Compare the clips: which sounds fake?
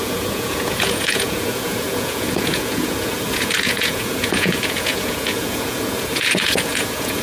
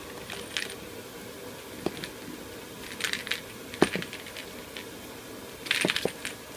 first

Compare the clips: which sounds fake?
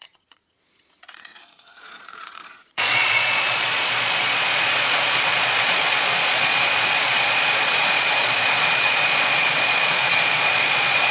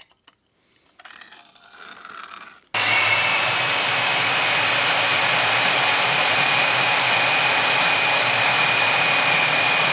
first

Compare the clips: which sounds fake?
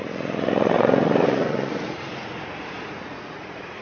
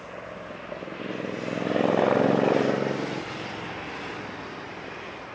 first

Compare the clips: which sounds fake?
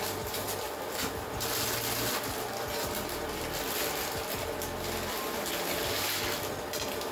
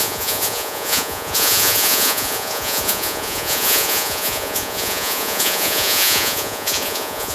second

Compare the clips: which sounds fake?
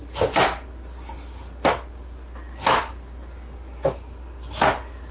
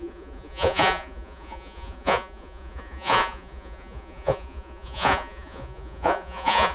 second